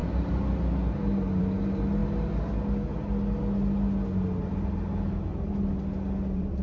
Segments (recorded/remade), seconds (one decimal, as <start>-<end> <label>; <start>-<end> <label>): 0.0-6.6 recorded